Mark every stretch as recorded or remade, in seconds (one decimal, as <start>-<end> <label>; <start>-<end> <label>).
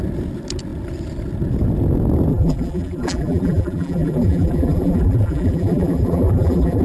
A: 0.0-2.3 recorded; 2.3-6.8 remade